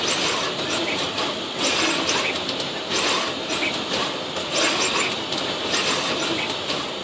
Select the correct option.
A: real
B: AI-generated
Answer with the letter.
A